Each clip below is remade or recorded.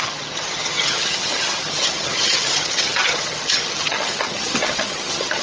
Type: remade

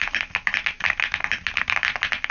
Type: recorded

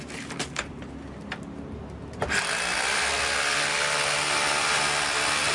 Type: recorded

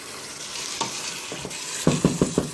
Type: recorded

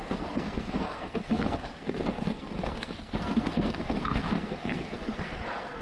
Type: remade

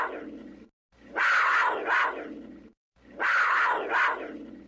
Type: recorded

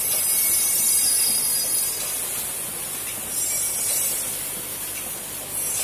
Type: remade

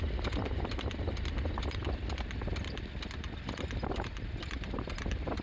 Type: recorded